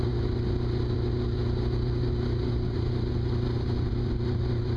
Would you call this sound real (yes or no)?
yes